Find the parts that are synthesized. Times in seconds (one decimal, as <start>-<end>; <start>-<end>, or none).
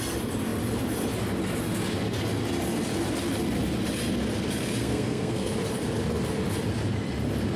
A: 4.8-5.5